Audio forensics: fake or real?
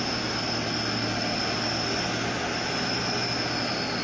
real